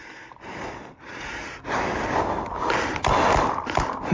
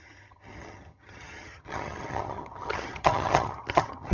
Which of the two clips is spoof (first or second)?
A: second